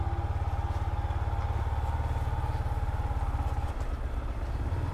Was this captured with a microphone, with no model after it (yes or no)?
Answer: yes